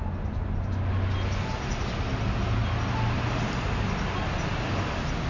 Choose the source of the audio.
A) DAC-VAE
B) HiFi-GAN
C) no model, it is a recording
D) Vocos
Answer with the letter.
C